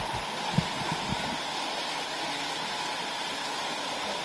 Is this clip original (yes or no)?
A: yes